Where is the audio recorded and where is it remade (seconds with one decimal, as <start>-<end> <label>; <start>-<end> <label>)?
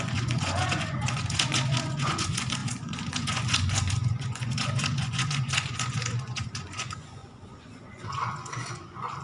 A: 0.0-9.2 remade